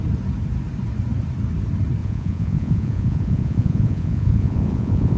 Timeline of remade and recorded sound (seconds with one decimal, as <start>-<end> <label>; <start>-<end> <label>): 0.0-2.0 recorded; 2.0-5.2 remade

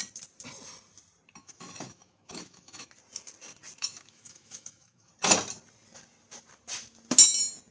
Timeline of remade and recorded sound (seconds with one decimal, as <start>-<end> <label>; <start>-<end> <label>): 0.0-1.4 recorded; 1.4-2.9 remade; 2.9-3.8 recorded; 3.8-5.1 remade; 5.1-7.7 recorded

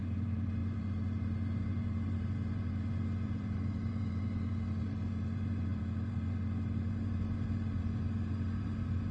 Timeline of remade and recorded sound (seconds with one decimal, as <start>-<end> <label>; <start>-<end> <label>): 0.0-9.1 remade

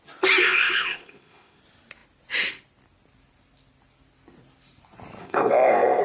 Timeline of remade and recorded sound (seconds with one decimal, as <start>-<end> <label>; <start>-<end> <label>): 0.0-0.4 recorded; 0.4-1.6 remade; 1.6-5.2 recorded; 5.2-6.0 remade

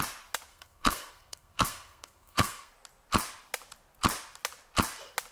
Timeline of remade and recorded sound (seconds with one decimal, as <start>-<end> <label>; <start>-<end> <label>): 0.0-0.5 recorded; 0.5-2.7 remade; 2.7-5.3 recorded

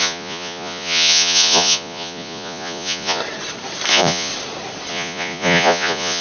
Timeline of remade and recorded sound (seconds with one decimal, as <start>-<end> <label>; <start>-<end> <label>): 0.0-3.2 remade; 3.2-3.9 recorded; 3.9-4.3 remade; 4.3-4.9 recorded; 4.9-6.2 remade

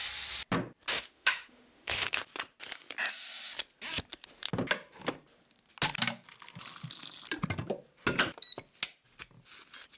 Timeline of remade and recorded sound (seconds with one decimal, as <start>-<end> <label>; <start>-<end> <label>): 0.0-0.9 recorded; 0.9-2.2 remade; 2.2-10.0 recorded